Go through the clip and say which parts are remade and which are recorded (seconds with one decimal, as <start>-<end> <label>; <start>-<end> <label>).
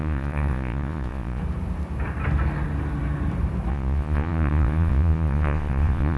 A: 0.0-1.4 remade; 1.4-3.7 recorded; 3.7-6.2 remade